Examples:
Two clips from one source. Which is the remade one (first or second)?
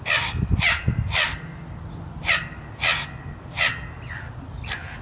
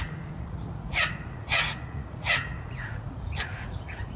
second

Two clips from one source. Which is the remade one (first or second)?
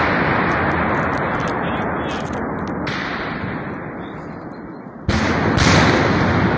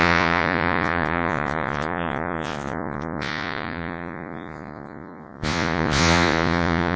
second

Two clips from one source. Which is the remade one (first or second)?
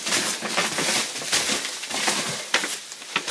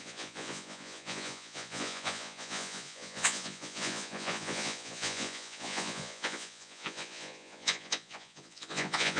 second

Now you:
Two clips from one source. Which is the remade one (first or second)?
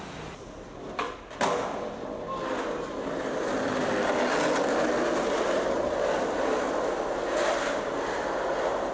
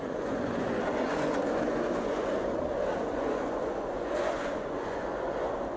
second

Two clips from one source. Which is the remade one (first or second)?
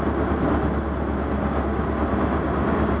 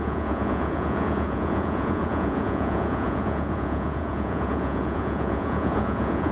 second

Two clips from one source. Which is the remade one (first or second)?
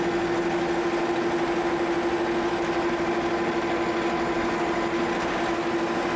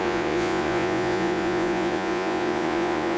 second